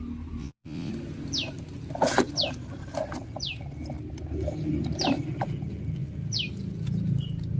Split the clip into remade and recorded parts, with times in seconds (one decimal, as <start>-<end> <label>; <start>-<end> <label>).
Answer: 0.0-0.4 recorded; 0.4-0.9 remade; 0.9-7.6 recorded